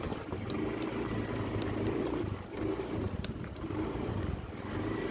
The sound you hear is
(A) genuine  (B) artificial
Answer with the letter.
B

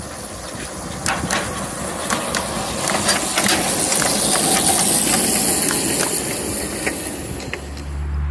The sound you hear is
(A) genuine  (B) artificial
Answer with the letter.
A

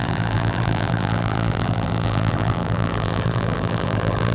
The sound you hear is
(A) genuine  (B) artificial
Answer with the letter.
B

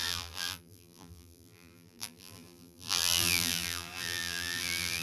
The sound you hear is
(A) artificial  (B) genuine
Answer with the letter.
A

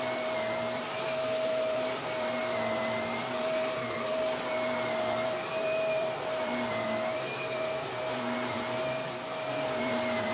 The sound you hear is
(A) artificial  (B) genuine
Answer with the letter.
A